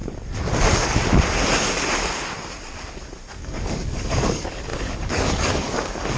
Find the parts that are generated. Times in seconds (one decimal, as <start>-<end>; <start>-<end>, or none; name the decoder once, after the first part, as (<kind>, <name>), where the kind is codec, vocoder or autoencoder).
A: 3.3-6.2 (codec, DAC)

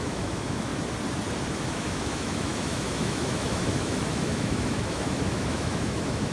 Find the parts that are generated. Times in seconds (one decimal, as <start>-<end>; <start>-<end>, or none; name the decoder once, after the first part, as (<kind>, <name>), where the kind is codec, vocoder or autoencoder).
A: 0.0-0.7 (autoencoder, DAC-VAE); 1.5-6.3

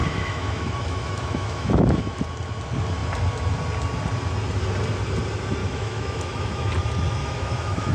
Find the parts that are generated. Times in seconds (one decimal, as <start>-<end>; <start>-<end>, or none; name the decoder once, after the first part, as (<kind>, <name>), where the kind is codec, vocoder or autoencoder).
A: 0.0-2.2 (autoencoder, DAC-VAE); 5.6-6.7; 7.2-7.9

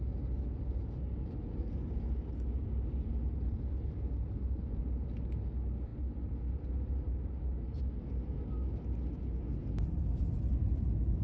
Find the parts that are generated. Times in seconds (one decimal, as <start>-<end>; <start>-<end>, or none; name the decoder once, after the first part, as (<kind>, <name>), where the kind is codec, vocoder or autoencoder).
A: 2.6-4.8 (vocoder, BigVGAN v2)